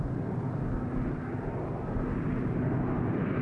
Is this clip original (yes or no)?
yes